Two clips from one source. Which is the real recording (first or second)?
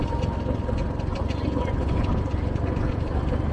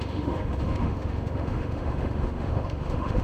first